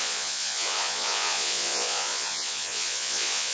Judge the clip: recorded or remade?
remade